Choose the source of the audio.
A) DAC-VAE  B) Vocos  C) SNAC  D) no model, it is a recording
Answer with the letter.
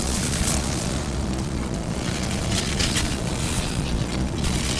B